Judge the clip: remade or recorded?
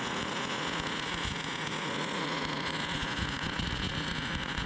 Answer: remade